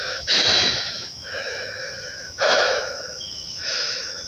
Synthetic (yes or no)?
yes